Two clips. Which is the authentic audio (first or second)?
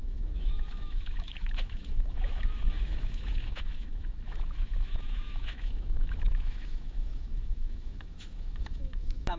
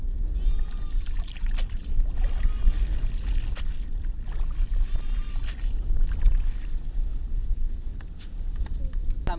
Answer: second